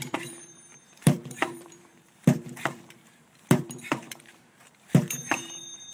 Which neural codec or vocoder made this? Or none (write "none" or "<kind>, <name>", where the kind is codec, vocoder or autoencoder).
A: vocoder, BigVGAN v2